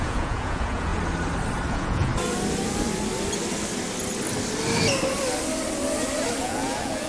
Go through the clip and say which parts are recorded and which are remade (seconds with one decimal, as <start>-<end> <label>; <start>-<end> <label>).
0.0-0.9 remade; 0.9-1.7 recorded; 1.7-2.1 remade; 2.1-6.4 recorded; 6.4-7.1 remade